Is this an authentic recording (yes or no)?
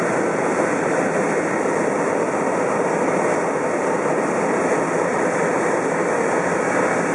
yes